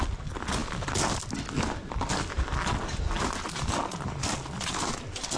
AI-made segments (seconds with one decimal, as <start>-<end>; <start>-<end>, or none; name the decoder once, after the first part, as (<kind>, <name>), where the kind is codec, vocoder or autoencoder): none